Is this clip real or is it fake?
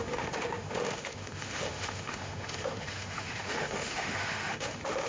fake